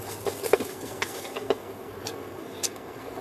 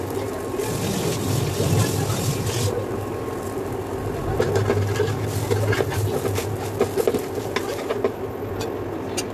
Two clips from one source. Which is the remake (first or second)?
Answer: first